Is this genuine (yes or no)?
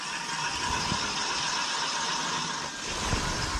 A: yes